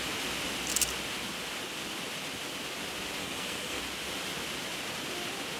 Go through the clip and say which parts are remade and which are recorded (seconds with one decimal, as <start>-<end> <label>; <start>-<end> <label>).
0.0-3.2 recorded; 3.2-3.8 remade; 3.8-5.6 recorded